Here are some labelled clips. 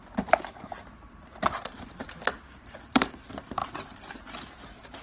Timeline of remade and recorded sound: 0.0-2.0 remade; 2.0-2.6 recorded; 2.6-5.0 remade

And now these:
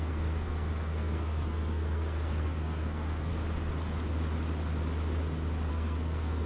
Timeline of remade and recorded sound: 0.0-3.3 remade; 3.3-5.7 recorded; 5.7-6.5 remade

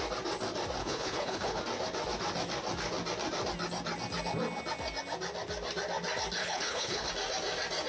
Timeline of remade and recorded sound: 0.0-0.8 recorded; 0.8-1.6 remade; 1.6-6.4 recorded; 6.4-7.1 remade; 7.1-7.9 recorded

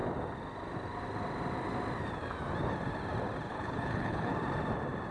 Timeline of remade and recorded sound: 0.0-3.5 recorded; 3.5-4.3 remade; 4.3-5.1 recorded